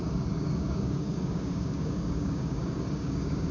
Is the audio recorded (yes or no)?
no